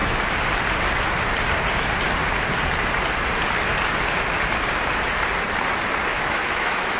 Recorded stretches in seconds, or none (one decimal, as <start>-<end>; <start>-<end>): 0.0-6.1